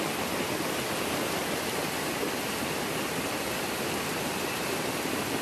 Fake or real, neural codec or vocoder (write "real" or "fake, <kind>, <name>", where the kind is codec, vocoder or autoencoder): real